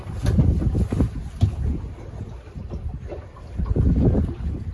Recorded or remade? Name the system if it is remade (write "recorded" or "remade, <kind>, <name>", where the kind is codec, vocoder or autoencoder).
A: recorded